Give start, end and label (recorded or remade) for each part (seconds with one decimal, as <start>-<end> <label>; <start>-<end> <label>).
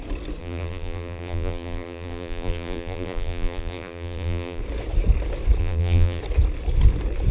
0.0-0.4 recorded; 0.4-4.6 remade; 4.6-5.6 recorded; 5.6-6.2 remade; 6.2-7.3 recorded